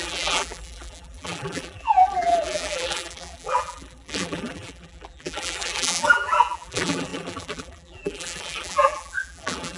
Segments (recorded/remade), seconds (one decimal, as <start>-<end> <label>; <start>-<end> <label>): 0.0-9.8 remade